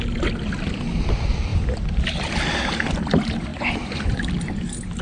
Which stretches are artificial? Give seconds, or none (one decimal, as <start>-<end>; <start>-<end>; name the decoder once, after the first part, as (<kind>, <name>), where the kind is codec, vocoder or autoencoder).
3.5-4.2 (vocoder, Vocos)